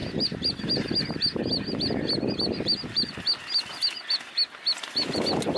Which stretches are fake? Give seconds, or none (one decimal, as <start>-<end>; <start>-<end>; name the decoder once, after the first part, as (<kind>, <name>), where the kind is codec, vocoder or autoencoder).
none